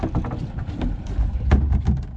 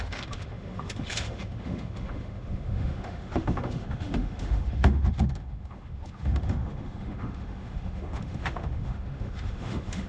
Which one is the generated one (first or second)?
second